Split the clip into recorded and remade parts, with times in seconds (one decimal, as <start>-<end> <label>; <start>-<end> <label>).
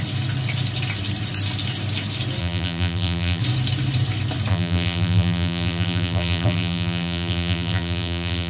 0.0-2.4 recorded; 2.4-3.4 remade; 3.4-4.5 recorded; 4.5-8.5 remade